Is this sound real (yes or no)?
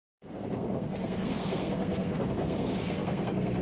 no